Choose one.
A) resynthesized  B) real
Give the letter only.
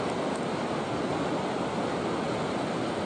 B